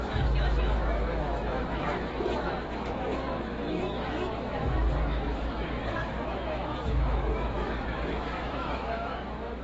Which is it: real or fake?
fake